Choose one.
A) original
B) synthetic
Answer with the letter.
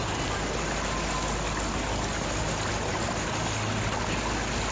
A